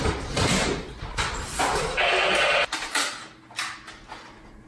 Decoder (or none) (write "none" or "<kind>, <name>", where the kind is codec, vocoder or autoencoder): none